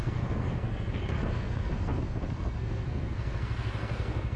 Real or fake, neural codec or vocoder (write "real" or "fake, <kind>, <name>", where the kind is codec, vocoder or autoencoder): fake, codec, SNAC